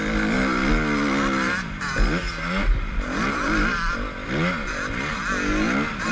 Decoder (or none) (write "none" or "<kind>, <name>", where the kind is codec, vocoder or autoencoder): none